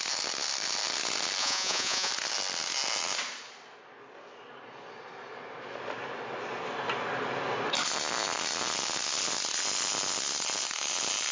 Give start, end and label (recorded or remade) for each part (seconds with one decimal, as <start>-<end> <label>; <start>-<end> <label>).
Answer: 0.0-1.4 recorded; 1.4-2.1 remade; 2.1-11.3 recorded